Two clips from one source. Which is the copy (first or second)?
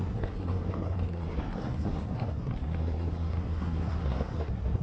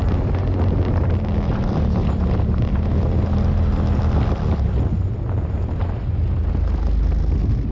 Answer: first